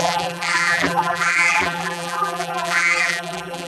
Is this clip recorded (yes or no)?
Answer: no